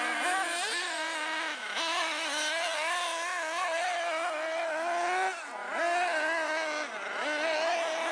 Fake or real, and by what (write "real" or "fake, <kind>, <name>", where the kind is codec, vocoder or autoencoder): real